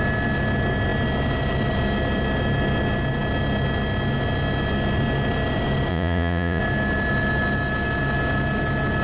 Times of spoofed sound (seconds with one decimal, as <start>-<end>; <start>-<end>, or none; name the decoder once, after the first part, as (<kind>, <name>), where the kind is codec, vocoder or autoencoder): 5.9-6.6 (vocoder, Vocos)